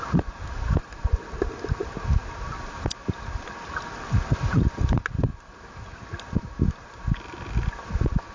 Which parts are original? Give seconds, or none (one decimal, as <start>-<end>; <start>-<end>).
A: 0.0-8.3